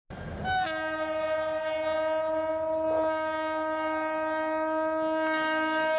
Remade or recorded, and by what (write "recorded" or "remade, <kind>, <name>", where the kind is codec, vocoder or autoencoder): recorded